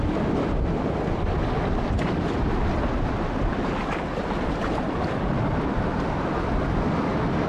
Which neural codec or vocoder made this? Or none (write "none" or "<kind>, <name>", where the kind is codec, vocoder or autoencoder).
none